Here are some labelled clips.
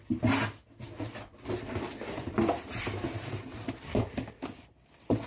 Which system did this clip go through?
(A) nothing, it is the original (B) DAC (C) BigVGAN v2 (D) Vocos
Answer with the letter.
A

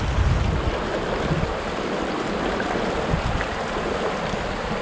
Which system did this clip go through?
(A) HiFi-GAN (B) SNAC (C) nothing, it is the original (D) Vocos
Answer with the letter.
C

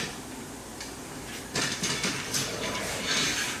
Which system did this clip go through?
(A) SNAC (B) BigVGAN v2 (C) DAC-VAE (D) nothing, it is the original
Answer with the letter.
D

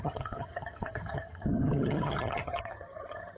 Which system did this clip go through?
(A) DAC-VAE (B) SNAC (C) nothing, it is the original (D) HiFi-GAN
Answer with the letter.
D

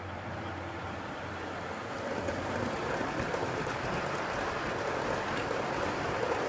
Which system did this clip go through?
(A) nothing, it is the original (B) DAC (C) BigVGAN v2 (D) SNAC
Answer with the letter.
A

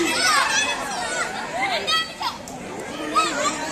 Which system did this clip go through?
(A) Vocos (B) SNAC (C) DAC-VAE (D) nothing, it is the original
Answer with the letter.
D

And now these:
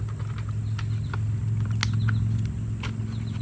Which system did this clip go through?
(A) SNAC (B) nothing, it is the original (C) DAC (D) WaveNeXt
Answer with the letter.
B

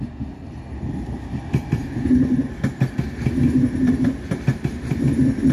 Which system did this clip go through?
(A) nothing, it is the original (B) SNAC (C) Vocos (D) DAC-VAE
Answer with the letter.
A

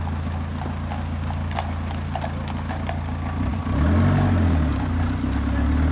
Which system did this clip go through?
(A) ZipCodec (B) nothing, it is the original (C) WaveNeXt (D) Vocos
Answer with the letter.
B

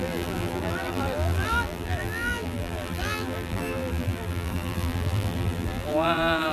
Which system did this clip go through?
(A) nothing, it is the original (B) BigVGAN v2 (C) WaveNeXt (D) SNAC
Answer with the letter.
B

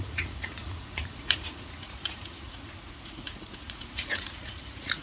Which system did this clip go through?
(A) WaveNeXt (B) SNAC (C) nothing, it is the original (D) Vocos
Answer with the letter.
D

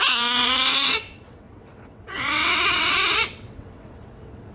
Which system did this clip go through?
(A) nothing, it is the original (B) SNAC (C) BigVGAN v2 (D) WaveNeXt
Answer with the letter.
D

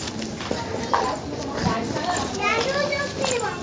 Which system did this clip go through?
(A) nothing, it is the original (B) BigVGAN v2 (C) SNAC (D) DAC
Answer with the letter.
A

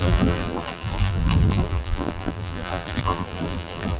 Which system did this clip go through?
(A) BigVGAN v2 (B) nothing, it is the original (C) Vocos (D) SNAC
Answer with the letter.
A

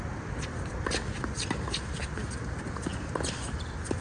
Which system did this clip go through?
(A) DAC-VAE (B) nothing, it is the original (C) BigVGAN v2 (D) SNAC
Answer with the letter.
C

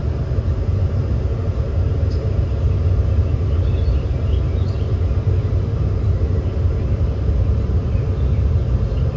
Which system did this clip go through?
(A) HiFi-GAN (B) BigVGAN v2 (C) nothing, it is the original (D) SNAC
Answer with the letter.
C